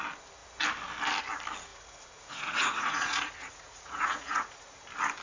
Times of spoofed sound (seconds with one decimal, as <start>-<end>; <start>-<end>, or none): 1.7-4.8